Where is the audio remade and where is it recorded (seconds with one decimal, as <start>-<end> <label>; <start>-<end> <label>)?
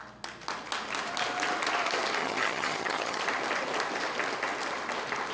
0.0-2.2 recorded; 2.2-3.2 remade; 3.2-5.3 recorded